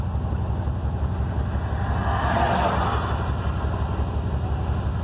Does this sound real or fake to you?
real